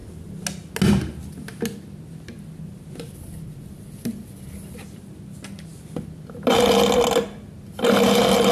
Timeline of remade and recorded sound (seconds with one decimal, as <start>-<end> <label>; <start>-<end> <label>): 0.0-8.5 recorded